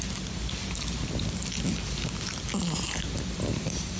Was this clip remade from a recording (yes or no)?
no